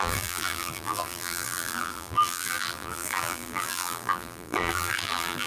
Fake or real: fake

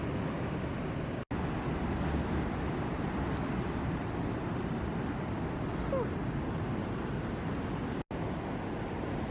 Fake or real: real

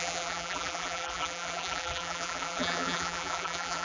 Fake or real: fake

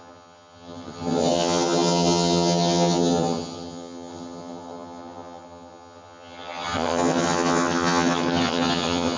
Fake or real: fake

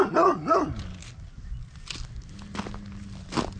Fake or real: real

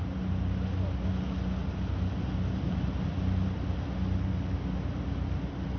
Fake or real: real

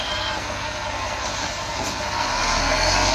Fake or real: fake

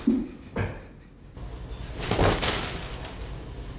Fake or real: real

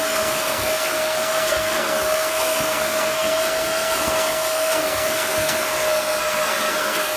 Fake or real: fake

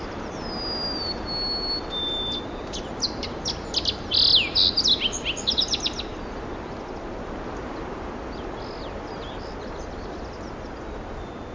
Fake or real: real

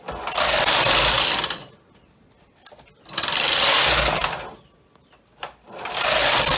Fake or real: real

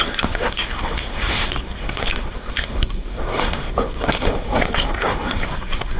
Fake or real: fake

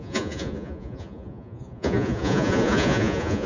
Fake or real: fake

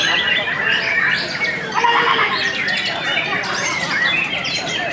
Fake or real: real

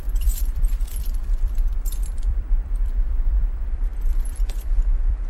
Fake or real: fake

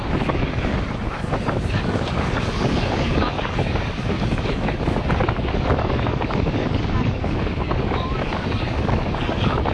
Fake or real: fake